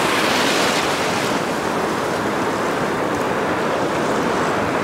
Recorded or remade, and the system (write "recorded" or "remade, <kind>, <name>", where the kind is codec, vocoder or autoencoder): remade, vocoder, BigVGAN v2